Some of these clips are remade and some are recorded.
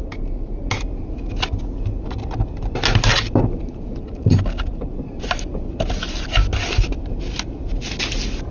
recorded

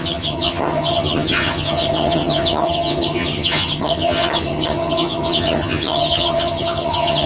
remade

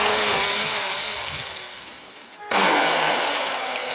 remade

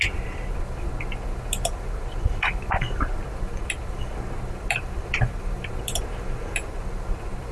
remade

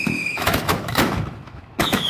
remade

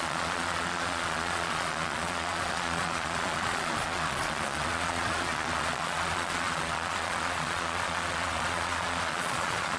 remade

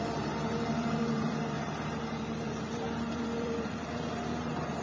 remade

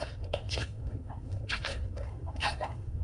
remade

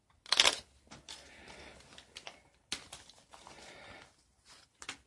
recorded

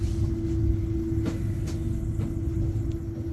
recorded